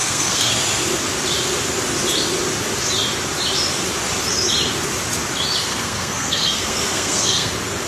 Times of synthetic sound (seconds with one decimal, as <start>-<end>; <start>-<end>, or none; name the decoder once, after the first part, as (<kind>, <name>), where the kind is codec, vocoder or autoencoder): 0.0-0.5 (codec, SNAC); 5.7-7.5